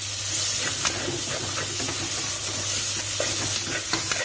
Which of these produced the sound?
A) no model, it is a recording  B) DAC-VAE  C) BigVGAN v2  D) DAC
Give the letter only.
A